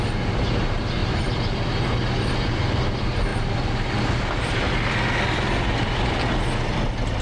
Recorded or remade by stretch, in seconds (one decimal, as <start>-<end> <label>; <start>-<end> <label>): 0.0-7.2 recorded

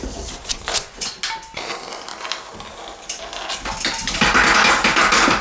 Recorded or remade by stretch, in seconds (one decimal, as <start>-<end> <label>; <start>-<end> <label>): 0.0-0.5 recorded; 0.5-1.1 remade; 1.1-5.4 recorded

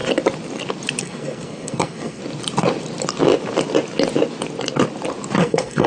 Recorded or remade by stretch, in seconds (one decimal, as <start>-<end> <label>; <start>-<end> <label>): 0.0-1.0 recorded; 1.0-2.2 remade; 2.2-5.4 recorded; 5.4-5.9 remade

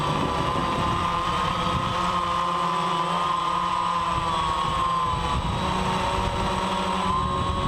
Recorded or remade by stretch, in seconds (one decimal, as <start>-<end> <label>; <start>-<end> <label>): 0.0-0.6 recorded; 0.6-3.7 remade; 3.7-7.7 recorded

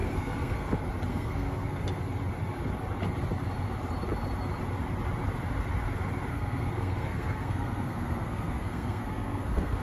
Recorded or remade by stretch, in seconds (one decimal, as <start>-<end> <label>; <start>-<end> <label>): 0.0-0.7 remade; 0.7-1.1 recorded; 1.1-2.0 remade; 2.0-6.3 recorded; 6.3-9.8 remade

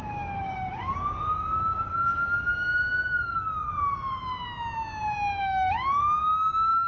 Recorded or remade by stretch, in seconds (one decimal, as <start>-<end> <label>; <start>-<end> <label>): 0.0-4.3 remade; 4.3-5.4 recorded; 5.4-6.9 remade

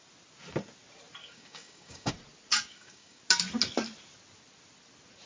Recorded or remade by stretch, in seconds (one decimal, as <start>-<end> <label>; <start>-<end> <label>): 0.0-1.2 recorded; 1.2-2.1 remade; 2.1-2.5 recorded; 2.5-3.2 remade; 3.2-5.3 recorded